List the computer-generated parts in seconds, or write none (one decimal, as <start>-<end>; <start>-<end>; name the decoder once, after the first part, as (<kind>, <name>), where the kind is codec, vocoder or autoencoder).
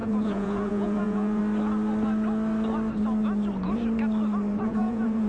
0.0-1.4 (vocoder, Vocos); 4.6-5.3